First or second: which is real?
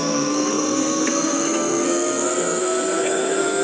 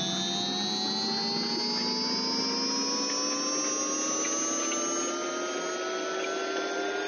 second